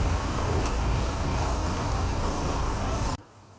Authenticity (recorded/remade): remade